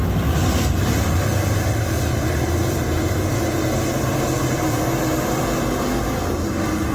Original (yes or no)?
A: yes